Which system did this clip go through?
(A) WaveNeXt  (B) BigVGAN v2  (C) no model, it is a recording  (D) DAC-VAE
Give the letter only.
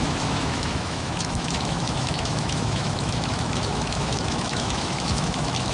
D